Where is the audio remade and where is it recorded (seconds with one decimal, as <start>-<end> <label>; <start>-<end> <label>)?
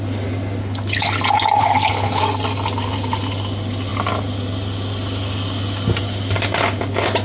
0.0-0.6 recorded; 0.6-1.1 remade; 1.1-1.6 recorded; 1.6-2.2 remade; 2.2-7.2 recorded